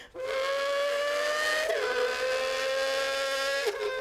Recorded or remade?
recorded